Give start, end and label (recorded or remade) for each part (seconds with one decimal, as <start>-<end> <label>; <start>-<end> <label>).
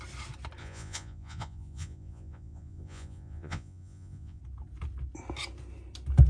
0.0-0.6 recorded; 0.6-4.4 remade; 4.4-6.3 recorded